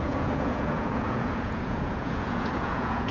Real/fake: fake